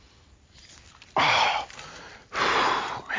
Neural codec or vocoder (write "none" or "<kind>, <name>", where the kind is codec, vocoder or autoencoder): none